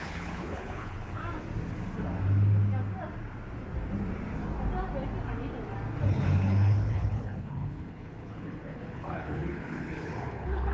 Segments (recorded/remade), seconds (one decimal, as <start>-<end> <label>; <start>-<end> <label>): 0.0-1.2 remade; 1.2-6.1 recorded; 6.1-10.7 remade